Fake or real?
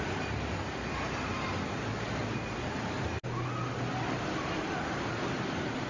real